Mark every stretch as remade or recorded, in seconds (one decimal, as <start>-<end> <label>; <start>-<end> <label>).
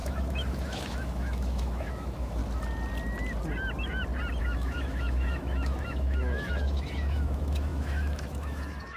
0.0-2.4 remade; 2.4-4.4 recorded; 4.4-9.0 remade